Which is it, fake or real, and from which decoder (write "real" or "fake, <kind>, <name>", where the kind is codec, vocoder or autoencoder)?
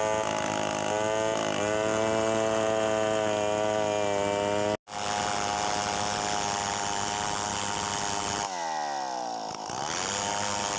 real